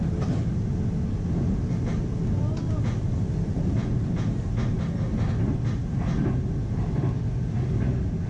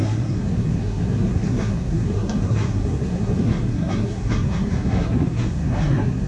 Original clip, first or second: first